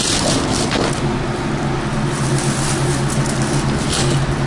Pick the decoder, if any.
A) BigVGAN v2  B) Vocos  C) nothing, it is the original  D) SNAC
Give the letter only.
C